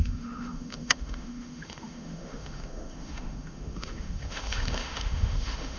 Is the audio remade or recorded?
remade